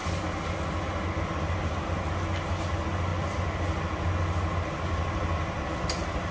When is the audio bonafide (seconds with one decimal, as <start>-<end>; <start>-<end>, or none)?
0.0-6.3